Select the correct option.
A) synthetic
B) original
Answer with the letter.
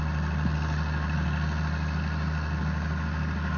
B